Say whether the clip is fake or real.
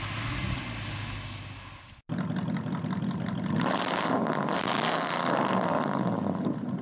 real